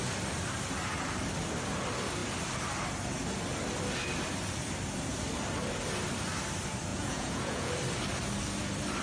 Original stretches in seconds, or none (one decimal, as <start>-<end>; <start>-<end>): 0.0-6.9; 7.7-9.0